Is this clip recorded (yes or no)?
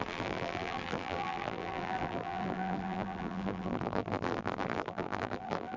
no